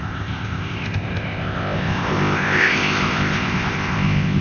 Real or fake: fake